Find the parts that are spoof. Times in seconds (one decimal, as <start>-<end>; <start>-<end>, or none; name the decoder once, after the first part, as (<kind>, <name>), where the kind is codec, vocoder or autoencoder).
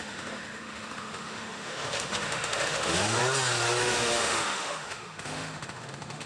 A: 0.0-3.2 (autoencoder, DAC-VAE); 3.8-6.3